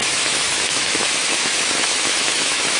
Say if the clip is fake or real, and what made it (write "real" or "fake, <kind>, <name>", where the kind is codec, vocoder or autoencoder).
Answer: fake, autoencoder, DAC-VAE